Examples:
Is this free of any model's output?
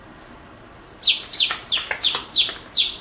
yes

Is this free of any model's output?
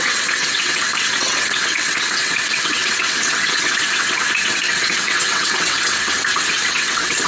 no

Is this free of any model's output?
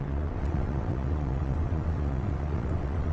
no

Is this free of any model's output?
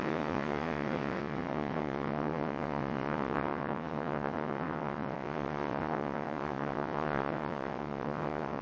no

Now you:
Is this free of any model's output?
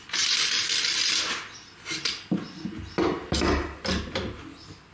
yes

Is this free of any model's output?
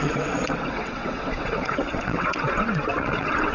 no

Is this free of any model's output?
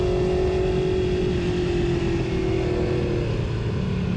yes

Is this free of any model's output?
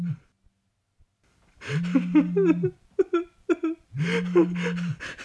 yes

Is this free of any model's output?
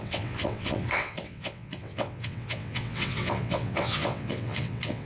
no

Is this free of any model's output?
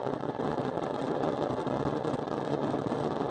no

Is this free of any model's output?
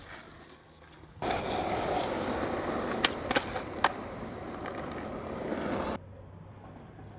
yes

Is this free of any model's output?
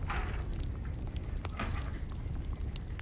yes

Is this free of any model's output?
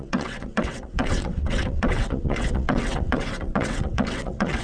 no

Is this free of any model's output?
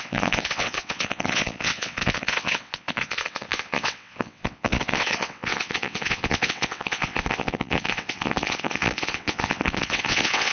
no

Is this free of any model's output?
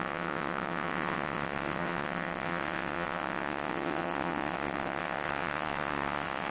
no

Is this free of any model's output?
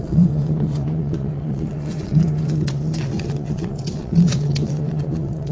no